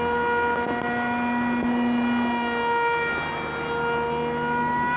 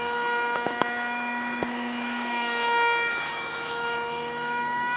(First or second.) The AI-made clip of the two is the second